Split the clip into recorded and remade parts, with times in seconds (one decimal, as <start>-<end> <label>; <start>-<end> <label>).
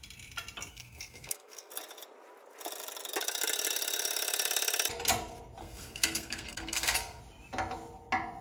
0.0-0.7 recorded; 0.7-1.7 remade; 1.7-5.6 recorded; 5.6-7.2 remade; 7.2-8.4 recorded